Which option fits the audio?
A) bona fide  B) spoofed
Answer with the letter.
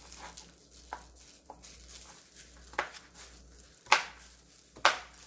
A